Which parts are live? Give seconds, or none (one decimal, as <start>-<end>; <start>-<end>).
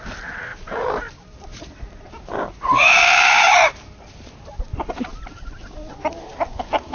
0.0-0.5; 4.6-6.9